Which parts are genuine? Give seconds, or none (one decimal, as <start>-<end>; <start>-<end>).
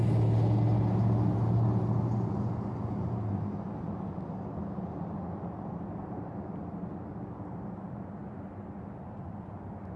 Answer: 0.0-10.0